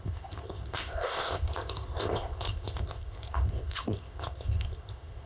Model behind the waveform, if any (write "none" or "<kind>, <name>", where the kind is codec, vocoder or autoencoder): codec, ZipCodec